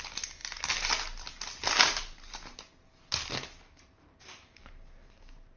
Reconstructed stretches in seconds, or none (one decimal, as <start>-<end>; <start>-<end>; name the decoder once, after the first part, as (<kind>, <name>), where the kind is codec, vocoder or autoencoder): none